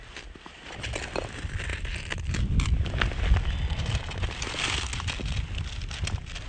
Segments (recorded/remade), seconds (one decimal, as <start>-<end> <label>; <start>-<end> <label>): 0.0-6.5 recorded